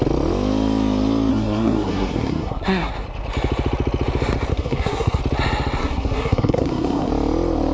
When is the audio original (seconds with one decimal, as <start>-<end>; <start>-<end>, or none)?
0.0-1.3; 2.9-4.5; 5.2-5.8; 7.1-7.7